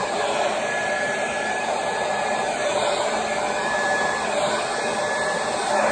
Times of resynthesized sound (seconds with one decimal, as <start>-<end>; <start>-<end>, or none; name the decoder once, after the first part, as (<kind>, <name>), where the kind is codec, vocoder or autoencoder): 0.0-5.9 (vocoder, BigVGAN v2)